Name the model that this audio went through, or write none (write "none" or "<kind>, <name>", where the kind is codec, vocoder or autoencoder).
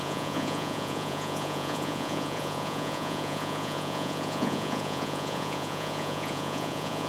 vocoder, Vocos